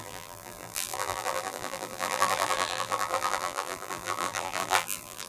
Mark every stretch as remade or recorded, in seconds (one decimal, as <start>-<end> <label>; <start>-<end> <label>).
0.0-5.3 remade